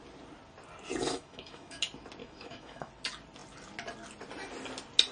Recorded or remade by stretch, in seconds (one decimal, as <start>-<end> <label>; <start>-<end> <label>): 0.0-1.0 recorded; 1.0-1.8 remade; 1.8-2.2 recorded; 2.2-2.9 remade; 2.9-5.1 recorded